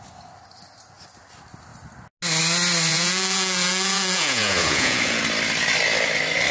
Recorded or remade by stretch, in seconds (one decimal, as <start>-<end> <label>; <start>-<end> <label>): 0.0-2.9 recorded; 2.9-5.2 remade; 5.2-6.5 recorded